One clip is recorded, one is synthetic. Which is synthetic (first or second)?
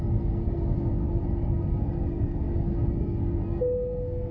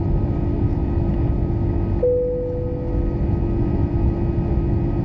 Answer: first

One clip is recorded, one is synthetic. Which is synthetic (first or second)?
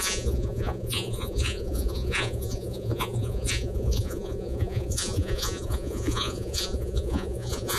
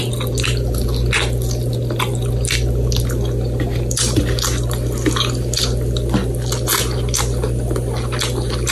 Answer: first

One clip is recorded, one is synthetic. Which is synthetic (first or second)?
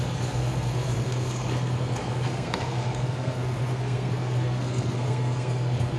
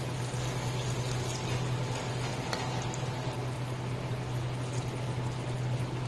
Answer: first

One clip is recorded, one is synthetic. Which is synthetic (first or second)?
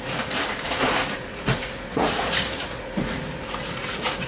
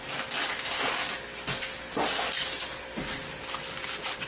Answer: first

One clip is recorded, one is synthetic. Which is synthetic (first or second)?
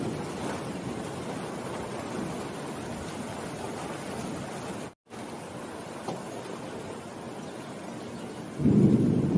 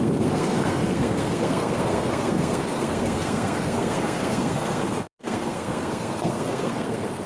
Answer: second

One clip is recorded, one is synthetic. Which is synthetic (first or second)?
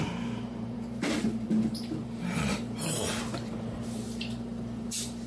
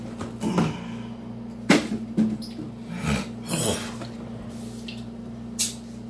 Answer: first